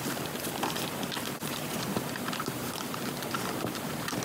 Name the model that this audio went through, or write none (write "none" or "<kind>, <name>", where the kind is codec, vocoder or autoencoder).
vocoder, BigVGAN v2